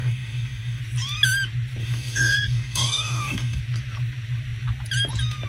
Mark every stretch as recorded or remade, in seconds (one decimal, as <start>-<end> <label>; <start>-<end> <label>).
0.0-0.8 remade; 0.8-1.8 recorded; 1.8-3.6 remade; 3.6-5.5 recorded